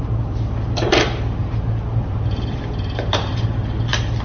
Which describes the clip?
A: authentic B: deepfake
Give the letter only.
A